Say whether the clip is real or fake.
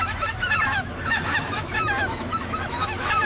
fake